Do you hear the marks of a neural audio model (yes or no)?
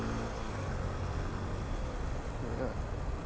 no